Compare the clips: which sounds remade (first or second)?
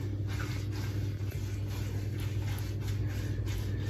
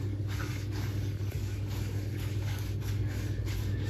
second